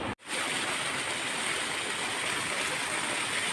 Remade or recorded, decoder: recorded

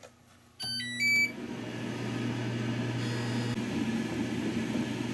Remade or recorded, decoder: recorded